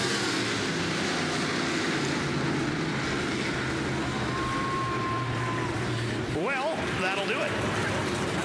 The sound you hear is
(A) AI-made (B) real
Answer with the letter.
B